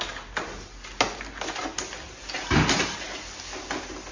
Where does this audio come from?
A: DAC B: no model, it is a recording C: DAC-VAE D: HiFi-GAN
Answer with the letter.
B